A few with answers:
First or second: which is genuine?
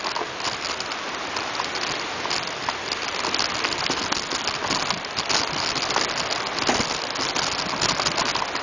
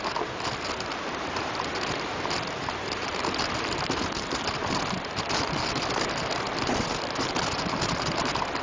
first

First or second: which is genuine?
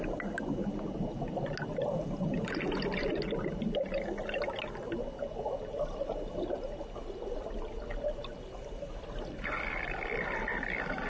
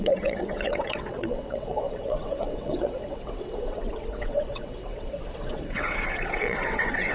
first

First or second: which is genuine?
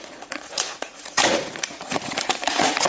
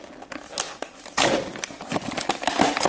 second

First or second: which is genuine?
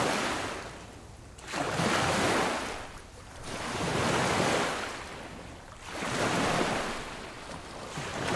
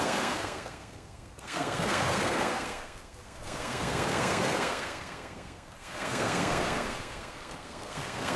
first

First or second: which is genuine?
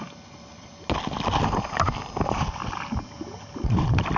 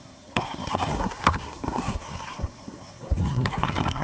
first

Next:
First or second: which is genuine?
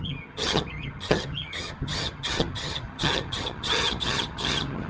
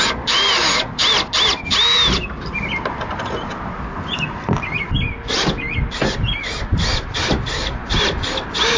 second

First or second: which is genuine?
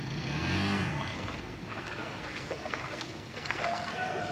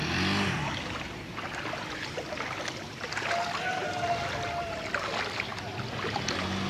second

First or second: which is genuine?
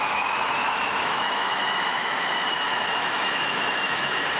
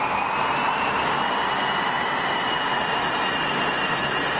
second